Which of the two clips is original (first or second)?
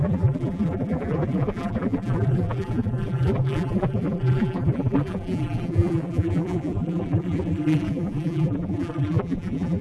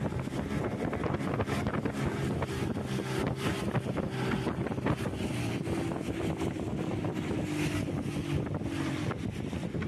second